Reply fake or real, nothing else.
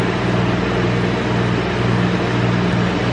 real